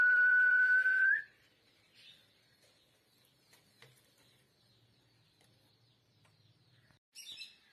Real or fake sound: fake